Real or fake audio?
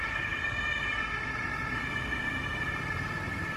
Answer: fake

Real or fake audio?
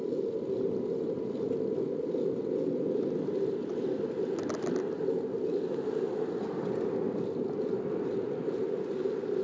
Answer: real